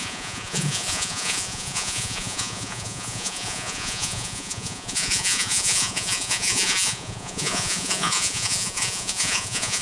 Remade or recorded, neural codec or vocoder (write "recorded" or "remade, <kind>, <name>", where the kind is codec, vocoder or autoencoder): remade, vocoder, Vocos